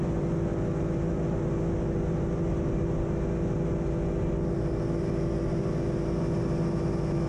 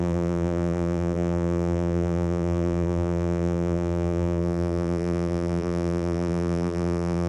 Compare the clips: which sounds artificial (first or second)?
second